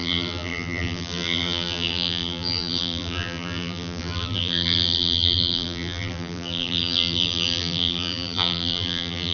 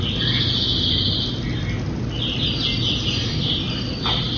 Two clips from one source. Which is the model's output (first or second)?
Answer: first